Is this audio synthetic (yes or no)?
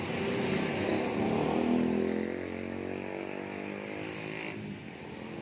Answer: no